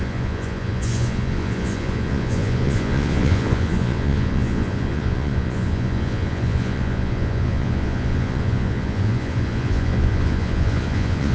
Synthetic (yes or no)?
yes